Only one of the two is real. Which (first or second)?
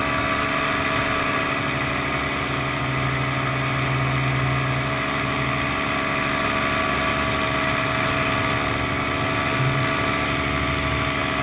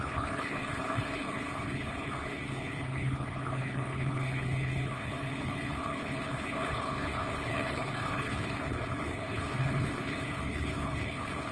first